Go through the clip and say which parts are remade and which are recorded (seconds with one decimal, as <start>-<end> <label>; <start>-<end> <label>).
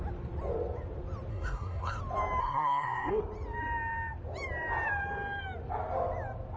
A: 0.0-1.3 recorded; 1.3-2.0 remade; 2.0-2.4 recorded; 2.4-3.2 remade; 3.2-6.6 recorded